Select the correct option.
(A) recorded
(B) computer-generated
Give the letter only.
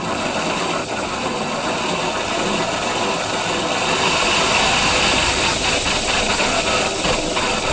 A